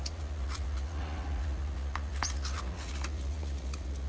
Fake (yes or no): yes